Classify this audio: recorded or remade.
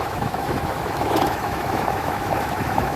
remade